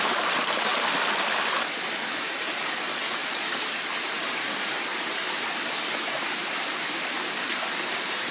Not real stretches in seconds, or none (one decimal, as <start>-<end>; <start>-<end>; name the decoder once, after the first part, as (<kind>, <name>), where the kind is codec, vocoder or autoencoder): 0.0-0.7 (vocoder, BigVGAN v2); 2.2-8.3